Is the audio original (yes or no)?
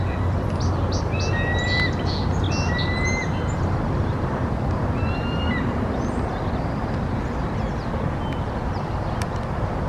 yes